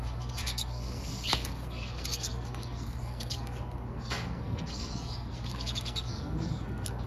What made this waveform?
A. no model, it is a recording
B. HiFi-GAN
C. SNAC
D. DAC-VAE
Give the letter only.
C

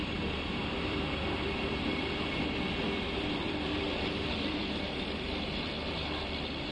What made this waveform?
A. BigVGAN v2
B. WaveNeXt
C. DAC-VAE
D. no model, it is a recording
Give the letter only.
A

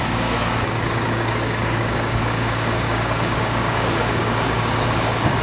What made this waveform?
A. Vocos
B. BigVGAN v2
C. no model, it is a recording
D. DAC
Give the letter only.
D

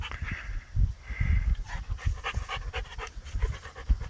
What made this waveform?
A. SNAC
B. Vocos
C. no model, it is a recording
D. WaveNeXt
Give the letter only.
C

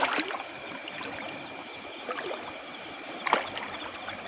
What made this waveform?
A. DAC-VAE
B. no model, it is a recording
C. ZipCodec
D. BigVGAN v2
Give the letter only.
B